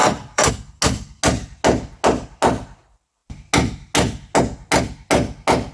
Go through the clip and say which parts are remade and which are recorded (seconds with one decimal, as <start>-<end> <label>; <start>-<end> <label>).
0.0-0.5 remade; 0.5-5.7 recorded